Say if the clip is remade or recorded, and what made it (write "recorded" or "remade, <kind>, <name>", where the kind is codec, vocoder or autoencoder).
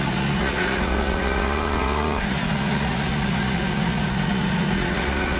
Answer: remade, vocoder, Vocos